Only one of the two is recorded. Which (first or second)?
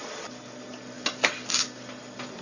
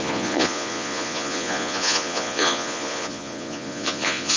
first